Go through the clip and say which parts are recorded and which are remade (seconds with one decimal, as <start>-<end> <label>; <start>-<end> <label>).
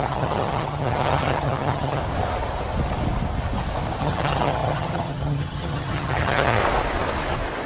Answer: 0.0-2.0 remade; 2.0-4.0 recorded; 4.0-6.6 remade; 6.6-7.7 recorded